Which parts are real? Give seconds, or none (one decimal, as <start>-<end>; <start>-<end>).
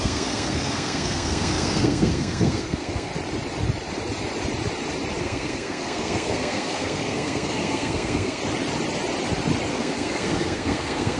3.1-5.2; 8.4-9.7